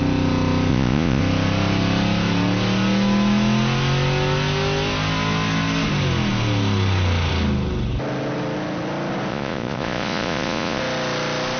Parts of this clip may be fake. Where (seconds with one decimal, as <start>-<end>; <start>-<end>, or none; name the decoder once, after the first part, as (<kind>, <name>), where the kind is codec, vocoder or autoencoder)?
0.7-1.2 (vocoder, Vocos); 9.3-10.8